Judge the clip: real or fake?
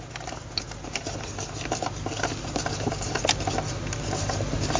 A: real